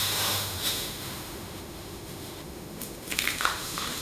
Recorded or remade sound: remade